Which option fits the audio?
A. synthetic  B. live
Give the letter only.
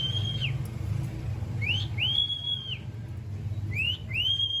B